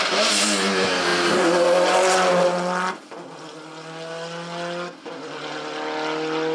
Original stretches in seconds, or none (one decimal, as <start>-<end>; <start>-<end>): 0.0-6.5